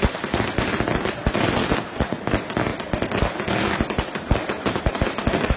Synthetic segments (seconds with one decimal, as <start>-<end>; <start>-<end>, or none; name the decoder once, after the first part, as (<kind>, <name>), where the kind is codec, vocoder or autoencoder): none